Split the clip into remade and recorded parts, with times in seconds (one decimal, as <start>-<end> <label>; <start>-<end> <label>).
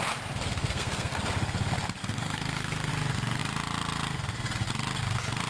0.0-0.6 recorded; 0.6-1.2 remade; 1.2-2.0 recorded; 2.0-2.9 remade; 2.9-5.5 recorded